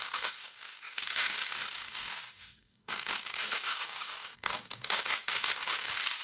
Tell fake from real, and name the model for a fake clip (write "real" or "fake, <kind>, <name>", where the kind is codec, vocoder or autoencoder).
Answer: fake, codec, DAC